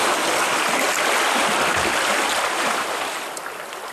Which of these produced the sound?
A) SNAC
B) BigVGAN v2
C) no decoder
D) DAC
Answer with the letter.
C